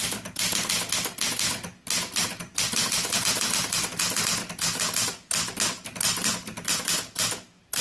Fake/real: real